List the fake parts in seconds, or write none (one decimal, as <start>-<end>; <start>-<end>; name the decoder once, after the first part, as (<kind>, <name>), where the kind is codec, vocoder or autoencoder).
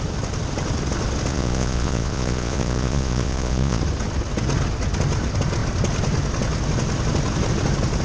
1.3-3.8 (vocoder, Vocos)